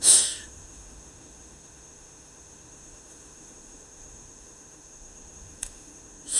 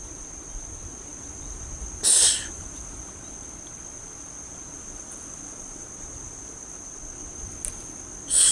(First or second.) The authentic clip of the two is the second